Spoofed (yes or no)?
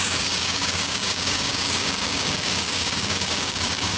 yes